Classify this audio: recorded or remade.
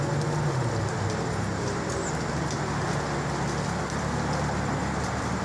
recorded